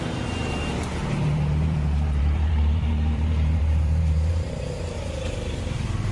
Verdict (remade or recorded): remade